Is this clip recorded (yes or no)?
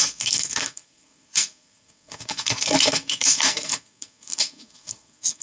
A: no